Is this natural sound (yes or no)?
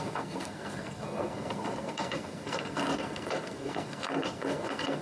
no